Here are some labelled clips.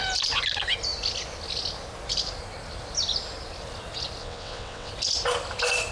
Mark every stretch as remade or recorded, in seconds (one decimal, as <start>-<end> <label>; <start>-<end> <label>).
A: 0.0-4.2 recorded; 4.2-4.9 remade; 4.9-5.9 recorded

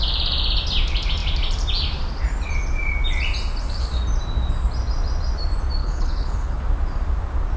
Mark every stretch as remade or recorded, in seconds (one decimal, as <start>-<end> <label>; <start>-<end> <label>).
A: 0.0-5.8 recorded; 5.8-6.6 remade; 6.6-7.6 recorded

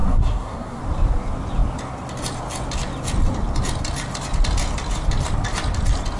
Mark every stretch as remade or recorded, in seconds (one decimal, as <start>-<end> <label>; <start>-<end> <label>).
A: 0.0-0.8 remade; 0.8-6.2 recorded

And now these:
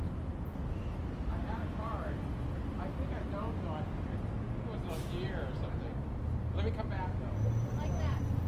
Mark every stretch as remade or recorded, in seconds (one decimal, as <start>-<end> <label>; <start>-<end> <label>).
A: 0.0-0.8 recorded; 0.8-2.2 remade; 2.2-8.5 recorded

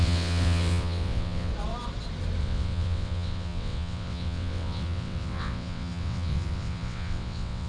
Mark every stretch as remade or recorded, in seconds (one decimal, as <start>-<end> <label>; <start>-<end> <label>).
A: 0.0-1.5 remade; 1.5-2.4 recorded; 2.4-7.7 remade

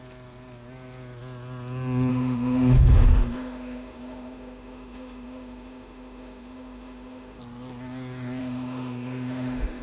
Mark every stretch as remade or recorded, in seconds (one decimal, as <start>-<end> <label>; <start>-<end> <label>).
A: 0.0-2.1 recorded; 2.1-7.4 remade; 7.4-8.4 recorded; 8.4-9.8 remade

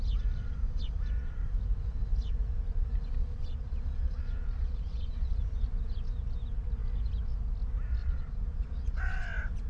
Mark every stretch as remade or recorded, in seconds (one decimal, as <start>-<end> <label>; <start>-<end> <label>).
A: 0.0-3.2 recorded; 3.2-5.4 remade; 5.4-8.0 recorded; 8.0-9.2 remade; 9.2-9.7 recorded

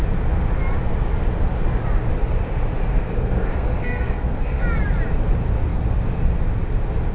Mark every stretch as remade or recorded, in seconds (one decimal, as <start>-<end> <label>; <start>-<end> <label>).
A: 0.0-2.9 recorded; 2.9-4.6 remade; 4.6-7.1 recorded